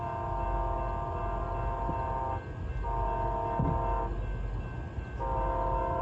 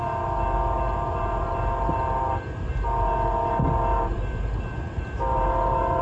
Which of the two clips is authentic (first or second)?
first